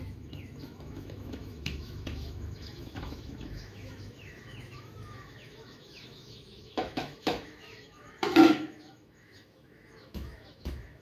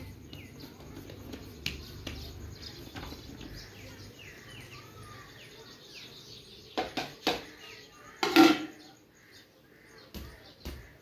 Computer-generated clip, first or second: first